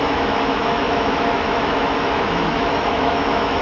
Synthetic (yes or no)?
yes